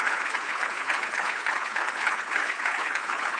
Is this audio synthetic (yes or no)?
yes